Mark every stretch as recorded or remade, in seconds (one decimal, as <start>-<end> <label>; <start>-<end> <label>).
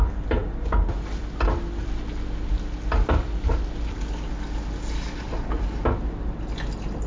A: 0.0-7.1 recorded